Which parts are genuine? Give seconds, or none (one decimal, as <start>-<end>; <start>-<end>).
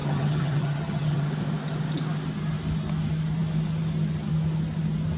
1.3-5.2